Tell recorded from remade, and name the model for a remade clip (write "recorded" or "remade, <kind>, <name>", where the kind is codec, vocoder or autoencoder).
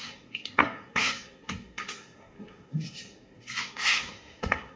remade, codec, SNAC